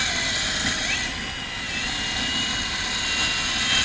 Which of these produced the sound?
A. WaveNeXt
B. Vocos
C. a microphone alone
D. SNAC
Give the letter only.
C